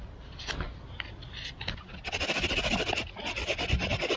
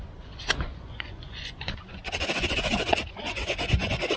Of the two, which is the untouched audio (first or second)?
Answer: first